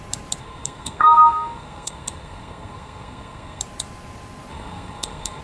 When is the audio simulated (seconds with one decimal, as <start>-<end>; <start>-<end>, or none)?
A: 0.4-3.6; 4.5-5.4